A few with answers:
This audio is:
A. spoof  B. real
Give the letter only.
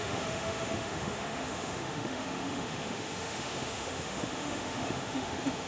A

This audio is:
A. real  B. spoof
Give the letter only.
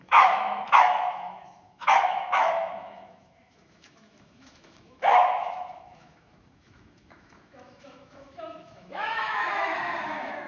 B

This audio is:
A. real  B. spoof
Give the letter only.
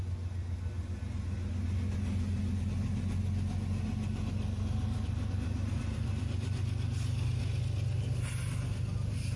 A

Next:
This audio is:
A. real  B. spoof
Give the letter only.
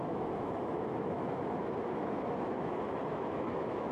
B